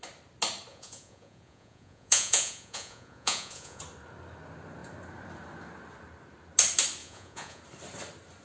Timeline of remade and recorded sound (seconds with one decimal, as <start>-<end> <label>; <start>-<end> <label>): 0.0-0.7 recorded; 0.7-3.8 remade; 3.8-7.0 recorded; 7.0-7.6 remade; 7.6-8.4 recorded